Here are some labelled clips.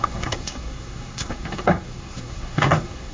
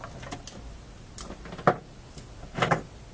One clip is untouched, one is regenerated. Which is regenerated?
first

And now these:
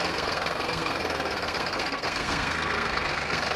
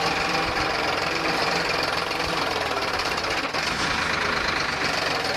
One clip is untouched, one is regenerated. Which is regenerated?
first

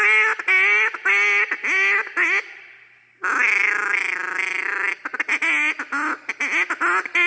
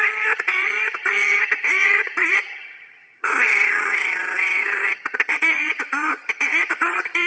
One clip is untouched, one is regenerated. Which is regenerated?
second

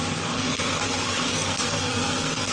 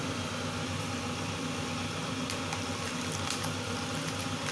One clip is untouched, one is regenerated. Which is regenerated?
first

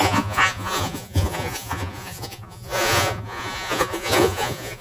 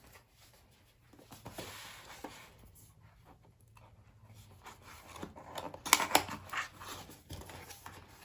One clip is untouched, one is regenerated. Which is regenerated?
first